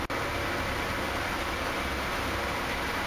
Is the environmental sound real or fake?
real